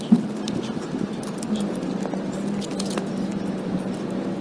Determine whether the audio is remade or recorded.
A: recorded